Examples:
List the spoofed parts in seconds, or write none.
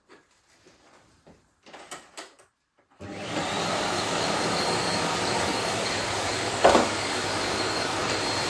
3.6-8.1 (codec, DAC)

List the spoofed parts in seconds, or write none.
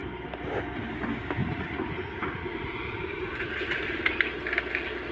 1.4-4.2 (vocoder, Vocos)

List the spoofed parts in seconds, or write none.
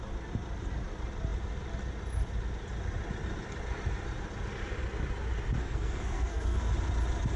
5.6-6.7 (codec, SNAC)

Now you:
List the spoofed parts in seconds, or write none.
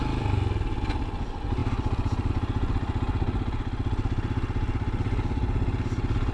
none